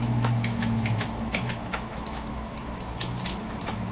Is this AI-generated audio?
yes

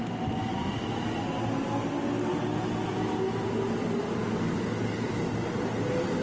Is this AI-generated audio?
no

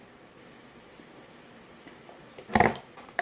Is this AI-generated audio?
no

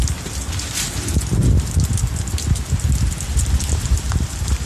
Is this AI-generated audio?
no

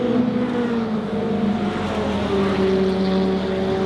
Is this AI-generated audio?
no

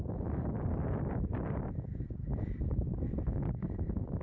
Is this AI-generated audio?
yes